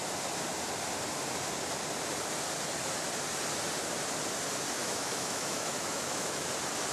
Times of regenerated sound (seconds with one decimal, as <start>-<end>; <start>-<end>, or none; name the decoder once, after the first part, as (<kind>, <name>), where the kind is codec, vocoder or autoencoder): 4.8-6.5 (autoencoder, DAC-VAE)